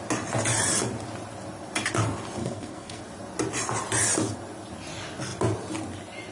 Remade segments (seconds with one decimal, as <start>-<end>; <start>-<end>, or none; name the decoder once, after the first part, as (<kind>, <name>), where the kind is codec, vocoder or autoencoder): 2.4-3.0 (codec, SNAC)